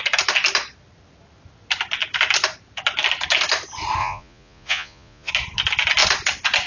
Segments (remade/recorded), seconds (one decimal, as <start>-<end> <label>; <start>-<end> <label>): 0.0-4.0 recorded; 4.0-5.3 remade; 5.3-6.7 recorded